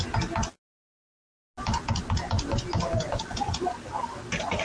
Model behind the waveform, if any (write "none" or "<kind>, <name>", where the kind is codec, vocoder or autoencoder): none